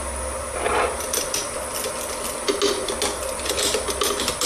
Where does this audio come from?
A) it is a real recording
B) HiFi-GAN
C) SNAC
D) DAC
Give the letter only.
A